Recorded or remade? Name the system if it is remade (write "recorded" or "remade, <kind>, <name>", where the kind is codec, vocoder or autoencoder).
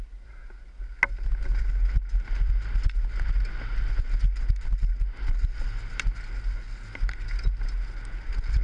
recorded